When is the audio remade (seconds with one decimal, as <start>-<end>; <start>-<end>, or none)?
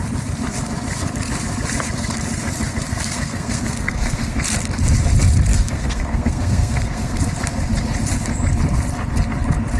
2.9-4.4; 5.5-7.2